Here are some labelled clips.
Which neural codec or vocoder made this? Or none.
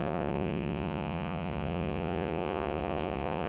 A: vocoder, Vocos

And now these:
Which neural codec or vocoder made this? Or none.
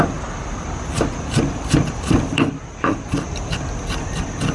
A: vocoder, BigVGAN v2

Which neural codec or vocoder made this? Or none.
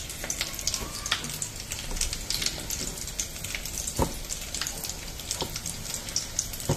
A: none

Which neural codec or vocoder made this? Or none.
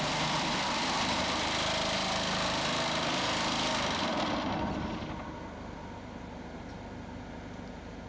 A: none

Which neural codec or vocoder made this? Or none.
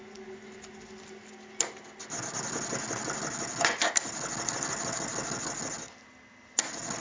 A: none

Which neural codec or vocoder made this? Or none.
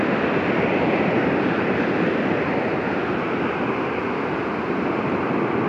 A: none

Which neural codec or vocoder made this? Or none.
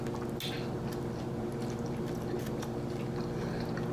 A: none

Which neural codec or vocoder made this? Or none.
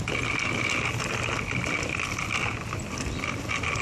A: none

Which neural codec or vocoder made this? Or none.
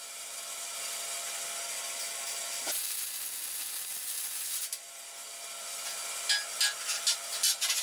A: none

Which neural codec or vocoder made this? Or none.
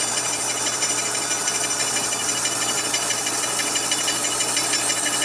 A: none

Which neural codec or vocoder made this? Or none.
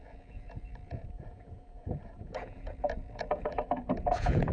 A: vocoder, Vocos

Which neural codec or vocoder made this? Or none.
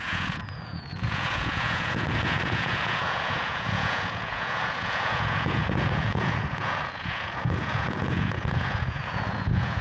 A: vocoder, Vocos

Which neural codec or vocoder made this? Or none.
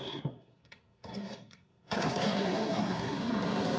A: codec, SNAC